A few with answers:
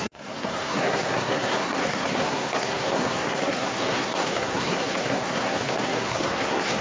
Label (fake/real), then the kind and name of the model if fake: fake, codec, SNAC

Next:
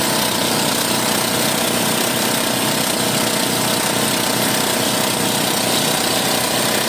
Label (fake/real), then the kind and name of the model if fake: real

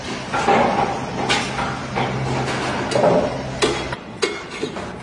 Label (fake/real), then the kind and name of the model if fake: real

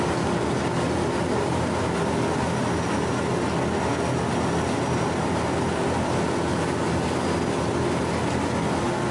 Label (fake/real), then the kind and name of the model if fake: real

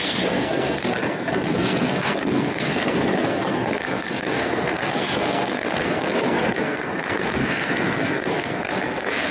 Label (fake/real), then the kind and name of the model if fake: fake, codec, SNAC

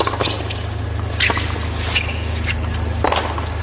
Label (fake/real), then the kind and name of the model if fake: real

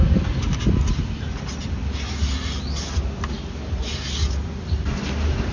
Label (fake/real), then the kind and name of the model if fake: real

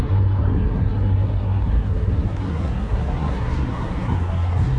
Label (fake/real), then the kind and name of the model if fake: fake, codec, SNAC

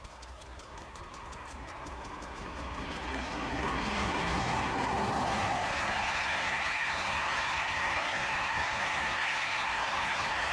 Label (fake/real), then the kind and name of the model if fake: fake, codec, SNAC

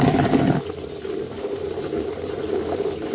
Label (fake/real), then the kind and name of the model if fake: real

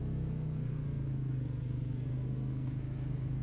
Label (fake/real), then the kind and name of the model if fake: fake, codec, SNAC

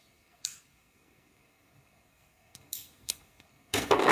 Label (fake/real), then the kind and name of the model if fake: fake, codec, SNAC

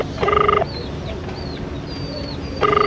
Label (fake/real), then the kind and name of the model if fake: real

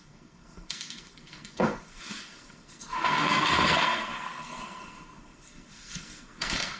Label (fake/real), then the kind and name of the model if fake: fake, codec, SNAC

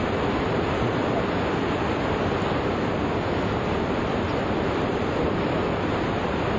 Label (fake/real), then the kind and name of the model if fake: real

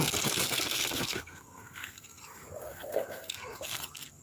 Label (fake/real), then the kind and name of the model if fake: fake, codec, SNAC